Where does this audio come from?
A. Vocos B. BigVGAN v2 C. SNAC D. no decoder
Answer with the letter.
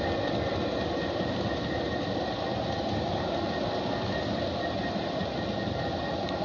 D